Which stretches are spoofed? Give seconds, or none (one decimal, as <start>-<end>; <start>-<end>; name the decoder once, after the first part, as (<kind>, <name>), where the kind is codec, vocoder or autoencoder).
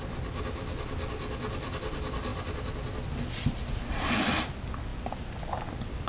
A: none